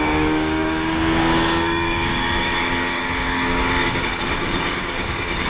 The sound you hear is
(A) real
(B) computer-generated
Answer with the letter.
B